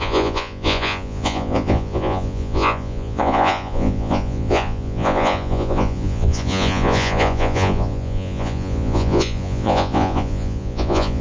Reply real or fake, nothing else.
fake